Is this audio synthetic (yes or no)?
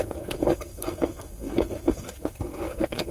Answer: yes